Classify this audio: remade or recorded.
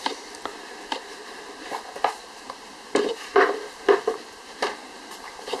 remade